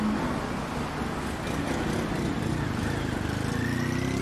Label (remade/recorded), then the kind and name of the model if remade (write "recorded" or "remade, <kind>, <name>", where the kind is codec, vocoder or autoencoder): recorded